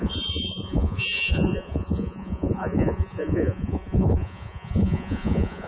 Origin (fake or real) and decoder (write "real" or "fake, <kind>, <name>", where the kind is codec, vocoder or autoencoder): fake, vocoder, Vocos